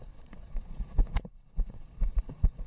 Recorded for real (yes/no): no